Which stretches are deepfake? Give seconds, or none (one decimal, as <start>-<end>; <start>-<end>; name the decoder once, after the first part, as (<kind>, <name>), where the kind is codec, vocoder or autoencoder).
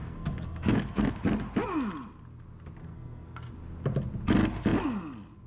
0.0-1.1 (codec, SNAC); 2.8-3.5